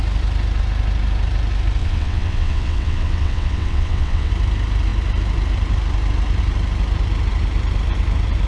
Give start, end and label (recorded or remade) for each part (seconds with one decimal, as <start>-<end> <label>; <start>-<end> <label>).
0.0-1.8 recorded; 1.8-4.3 remade; 4.3-8.5 recorded